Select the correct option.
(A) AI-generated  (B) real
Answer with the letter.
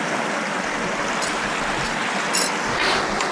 B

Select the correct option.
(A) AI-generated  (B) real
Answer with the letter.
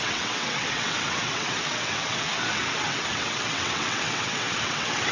A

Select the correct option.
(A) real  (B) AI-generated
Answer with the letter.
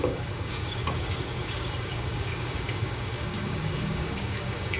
B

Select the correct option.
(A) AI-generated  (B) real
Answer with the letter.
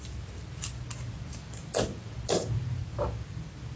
B